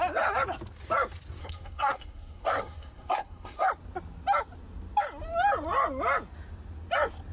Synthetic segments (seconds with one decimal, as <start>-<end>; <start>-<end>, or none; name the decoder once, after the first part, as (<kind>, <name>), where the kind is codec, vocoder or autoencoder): 1.4-3.7 (codec, SNAC)